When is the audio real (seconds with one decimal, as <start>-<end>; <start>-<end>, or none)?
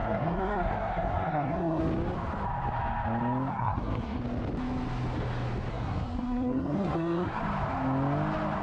1.8-3.5; 4.2-5.7; 7.4-8.6